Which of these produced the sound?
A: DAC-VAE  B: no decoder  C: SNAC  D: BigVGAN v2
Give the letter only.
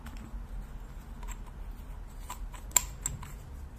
B